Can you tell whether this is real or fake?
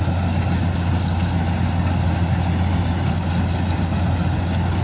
real